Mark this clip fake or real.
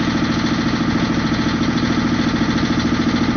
real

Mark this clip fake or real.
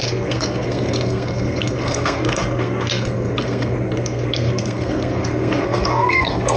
fake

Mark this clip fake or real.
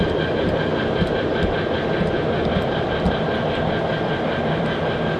real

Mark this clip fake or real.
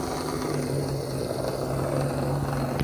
real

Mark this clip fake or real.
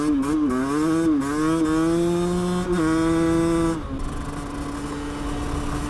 real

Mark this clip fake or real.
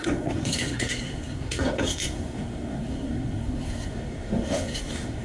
fake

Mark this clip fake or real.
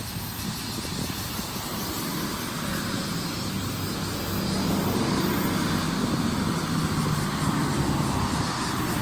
real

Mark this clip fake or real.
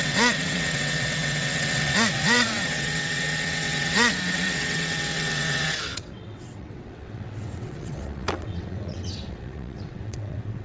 fake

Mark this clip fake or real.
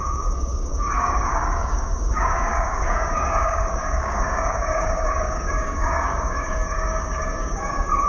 fake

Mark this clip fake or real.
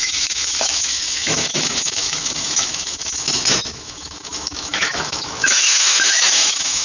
fake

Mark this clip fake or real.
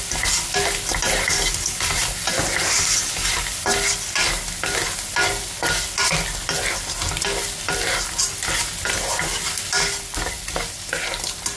real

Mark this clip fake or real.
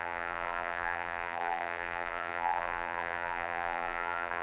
fake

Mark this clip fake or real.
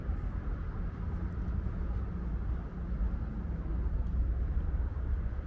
real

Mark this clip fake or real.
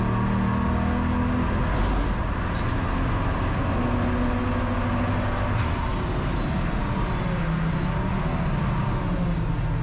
real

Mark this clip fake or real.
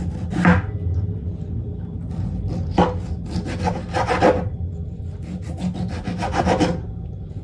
real